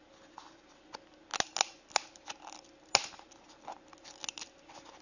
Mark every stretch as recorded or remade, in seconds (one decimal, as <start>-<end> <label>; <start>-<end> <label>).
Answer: 0.0-5.0 recorded